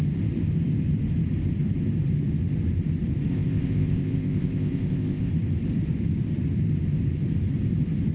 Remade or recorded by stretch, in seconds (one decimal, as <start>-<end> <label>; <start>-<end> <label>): 0.0-3.3 recorded; 3.3-5.3 remade; 5.3-8.1 recorded